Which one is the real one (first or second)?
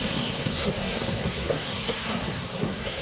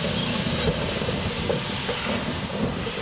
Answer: second